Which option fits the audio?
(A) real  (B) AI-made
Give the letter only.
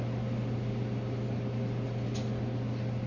A